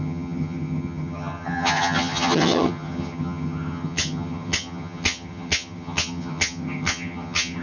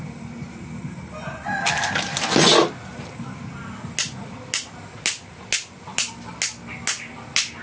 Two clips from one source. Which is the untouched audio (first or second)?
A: second